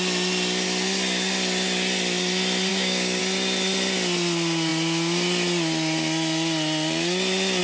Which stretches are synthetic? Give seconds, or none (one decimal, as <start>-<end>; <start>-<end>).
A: 2.7-3.2